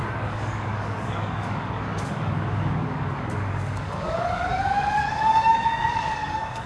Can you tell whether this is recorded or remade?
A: remade